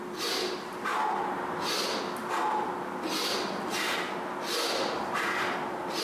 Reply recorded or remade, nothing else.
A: recorded